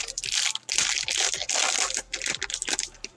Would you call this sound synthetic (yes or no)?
no